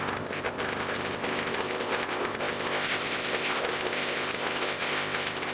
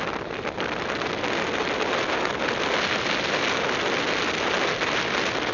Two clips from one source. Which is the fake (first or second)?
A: first